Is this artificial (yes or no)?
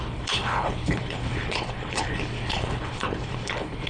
yes